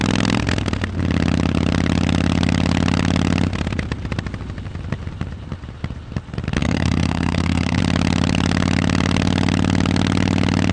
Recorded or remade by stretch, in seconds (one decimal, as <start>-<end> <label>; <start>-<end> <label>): 0.0-6.6 recorded; 6.6-7.8 remade; 7.8-10.7 recorded